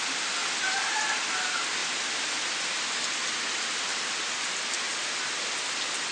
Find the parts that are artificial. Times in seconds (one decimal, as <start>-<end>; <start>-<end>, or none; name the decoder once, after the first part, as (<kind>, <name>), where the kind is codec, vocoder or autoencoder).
0.4-1.1 (vocoder, BigVGAN v2); 1.8-5.5